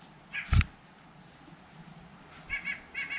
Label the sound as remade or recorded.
recorded